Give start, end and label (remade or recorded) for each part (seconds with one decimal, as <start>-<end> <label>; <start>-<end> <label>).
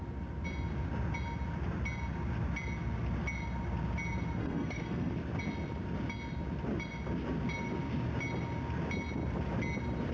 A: 0.0-4.4 recorded; 4.4-5.1 remade; 5.1-10.1 recorded